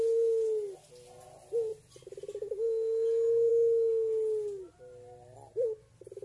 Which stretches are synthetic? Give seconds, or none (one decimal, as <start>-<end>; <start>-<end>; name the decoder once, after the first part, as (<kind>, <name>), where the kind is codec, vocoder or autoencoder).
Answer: none